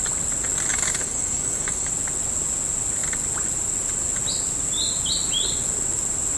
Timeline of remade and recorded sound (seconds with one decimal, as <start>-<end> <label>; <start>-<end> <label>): 0.0-0.7 recorded; 0.7-1.9 remade; 1.9-6.4 recorded